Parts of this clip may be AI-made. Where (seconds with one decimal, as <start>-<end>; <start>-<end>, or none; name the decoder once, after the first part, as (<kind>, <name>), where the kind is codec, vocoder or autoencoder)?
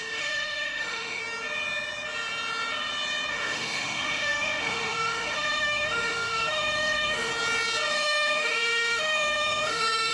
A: 0.0-1.2 (autoencoder, DAC-VAE); 3.3-7.3; 7.9-10.1